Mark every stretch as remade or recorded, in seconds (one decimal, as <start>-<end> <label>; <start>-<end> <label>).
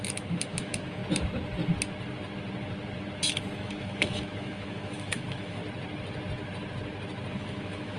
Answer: 0.0-1.0 remade; 1.0-3.2 recorded; 3.2-5.6 remade; 5.6-7.3 recorded; 7.3-8.0 remade